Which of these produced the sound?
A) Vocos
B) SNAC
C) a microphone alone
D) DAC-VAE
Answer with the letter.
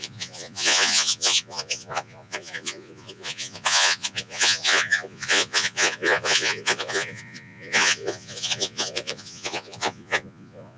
A